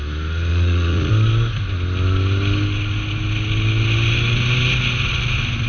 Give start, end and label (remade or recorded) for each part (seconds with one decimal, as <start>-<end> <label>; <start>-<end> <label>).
0.0-0.5 recorded; 0.5-1.1 remade; 1.1-5.7 recorded